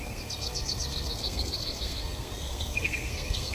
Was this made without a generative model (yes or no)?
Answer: no